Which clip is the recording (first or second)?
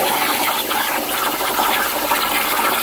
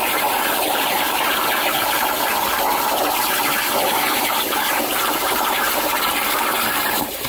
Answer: first